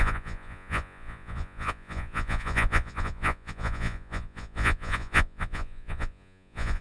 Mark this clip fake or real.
fake